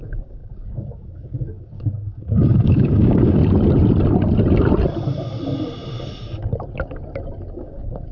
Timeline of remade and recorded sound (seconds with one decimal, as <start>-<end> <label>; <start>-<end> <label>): 0.0-3.4 remade; 3.4-7.5 recorded; 7.5-8.1 remade